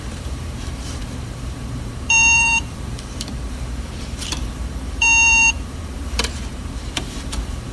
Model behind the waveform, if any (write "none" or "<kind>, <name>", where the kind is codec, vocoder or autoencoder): vocoder, BigVGAN v2